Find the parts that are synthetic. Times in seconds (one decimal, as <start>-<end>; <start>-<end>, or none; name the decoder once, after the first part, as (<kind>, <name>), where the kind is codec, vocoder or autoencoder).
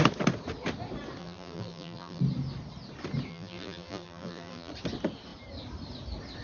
1.2-2.2 (vocoder, BigVGAN v2); 3.3-4.7